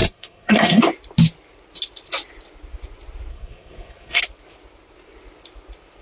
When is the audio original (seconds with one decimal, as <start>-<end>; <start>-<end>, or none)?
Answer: 0.8-3.3; 4.2-6.0